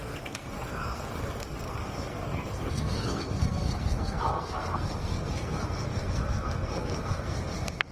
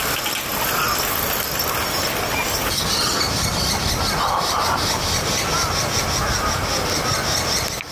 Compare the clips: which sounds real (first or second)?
second